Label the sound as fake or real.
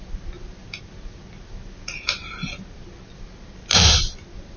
real